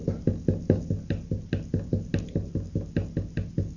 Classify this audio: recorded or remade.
recorded